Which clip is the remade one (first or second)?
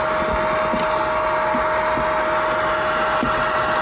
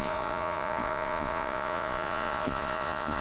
second